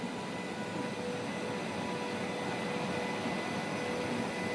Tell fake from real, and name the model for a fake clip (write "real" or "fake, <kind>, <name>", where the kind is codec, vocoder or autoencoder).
real